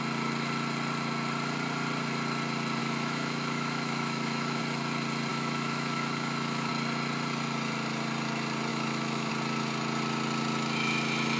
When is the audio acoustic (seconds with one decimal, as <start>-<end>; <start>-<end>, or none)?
0.0-2.8; 4.6-5.3; 6.7-8.7; 9.3-11.4